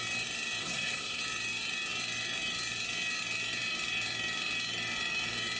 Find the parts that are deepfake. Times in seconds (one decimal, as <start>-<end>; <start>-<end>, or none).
0.6-1.2